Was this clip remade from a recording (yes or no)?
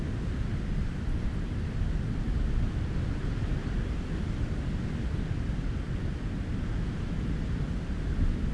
no